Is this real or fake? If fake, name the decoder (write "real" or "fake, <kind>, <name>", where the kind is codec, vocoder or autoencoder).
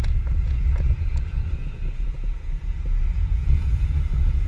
fake, vocoder, Vocos